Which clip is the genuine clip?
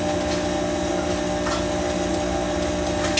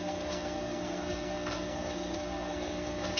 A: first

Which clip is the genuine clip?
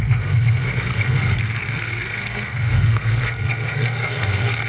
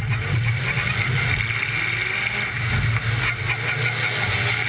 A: second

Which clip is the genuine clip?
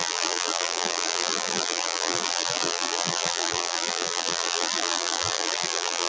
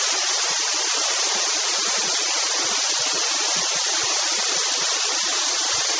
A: second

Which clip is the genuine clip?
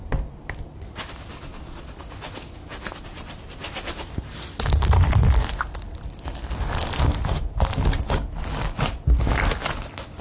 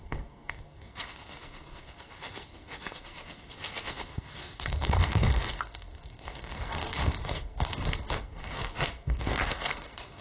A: first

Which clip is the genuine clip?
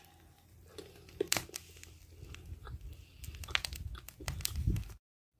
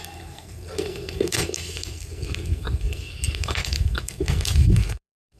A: first